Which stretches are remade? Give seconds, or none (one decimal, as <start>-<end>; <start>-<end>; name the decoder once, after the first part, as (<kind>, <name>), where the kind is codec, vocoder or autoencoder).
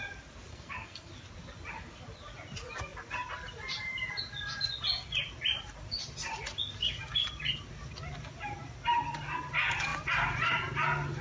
0.5-1.1 (codec, SNAC)